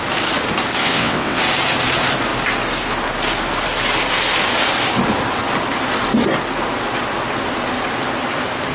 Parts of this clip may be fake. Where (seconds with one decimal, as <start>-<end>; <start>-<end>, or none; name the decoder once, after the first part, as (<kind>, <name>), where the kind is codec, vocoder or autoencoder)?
0.8-1.4 (vocoder, WaveNeXt)